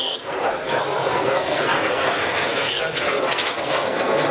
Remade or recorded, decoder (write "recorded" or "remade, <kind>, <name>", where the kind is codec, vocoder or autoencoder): remade, codec, SNAC